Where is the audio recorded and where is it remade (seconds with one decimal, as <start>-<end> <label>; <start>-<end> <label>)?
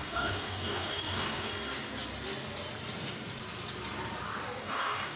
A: 0.0-1.5 remade; 1.5-4.6 recorded; 4.6-5.2 remade